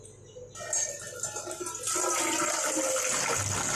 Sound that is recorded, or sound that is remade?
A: recorded